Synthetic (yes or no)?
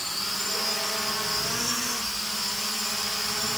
yes